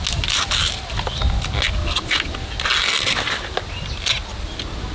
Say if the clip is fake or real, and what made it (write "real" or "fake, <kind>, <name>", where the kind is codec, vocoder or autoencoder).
real